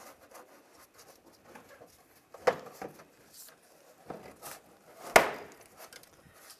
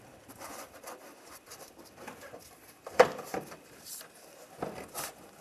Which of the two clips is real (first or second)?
first